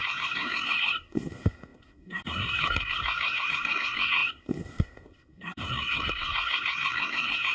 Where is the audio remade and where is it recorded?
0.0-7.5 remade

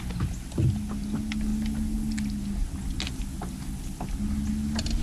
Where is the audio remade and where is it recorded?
0.0-5.0 recorded

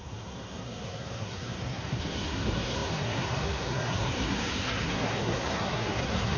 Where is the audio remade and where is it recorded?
0.0-6.4 remade

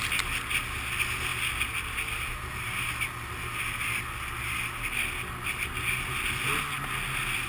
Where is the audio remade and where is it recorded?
0.0-7.5 recorded